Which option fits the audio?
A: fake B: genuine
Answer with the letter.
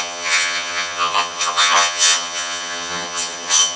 A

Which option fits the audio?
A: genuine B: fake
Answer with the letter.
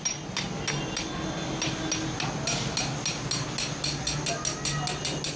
A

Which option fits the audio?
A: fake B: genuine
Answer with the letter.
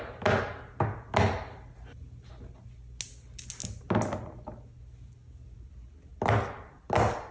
B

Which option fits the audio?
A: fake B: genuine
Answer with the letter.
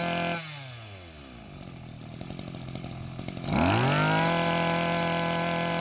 B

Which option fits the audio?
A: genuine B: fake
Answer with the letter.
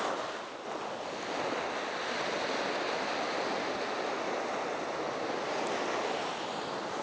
A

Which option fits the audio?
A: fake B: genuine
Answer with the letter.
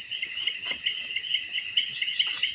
B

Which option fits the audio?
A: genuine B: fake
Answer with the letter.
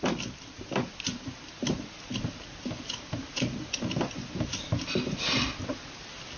A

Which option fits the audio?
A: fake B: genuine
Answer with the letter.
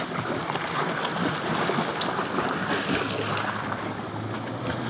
B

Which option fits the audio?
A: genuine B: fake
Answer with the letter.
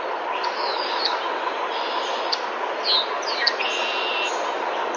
A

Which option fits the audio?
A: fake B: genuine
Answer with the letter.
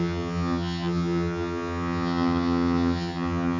A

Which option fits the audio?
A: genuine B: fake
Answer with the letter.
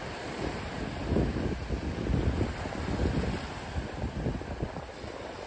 A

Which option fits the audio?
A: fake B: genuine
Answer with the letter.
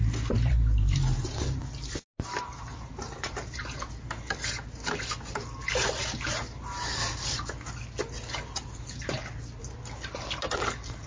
B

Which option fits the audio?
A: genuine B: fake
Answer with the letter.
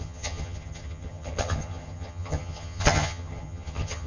B